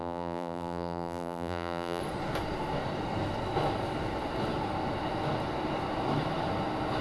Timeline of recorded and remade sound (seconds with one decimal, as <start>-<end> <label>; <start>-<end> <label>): 0.0-2.0 remade; 2.0-7.0 recorded